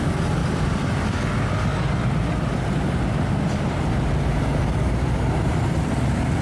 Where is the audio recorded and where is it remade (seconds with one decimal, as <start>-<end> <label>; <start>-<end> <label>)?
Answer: 0.0-0.4 recorded; 0.4-1.0 remade; 1.0-1.7 recorded; 1.7-5.5 remade; 5.5-6.4 recorded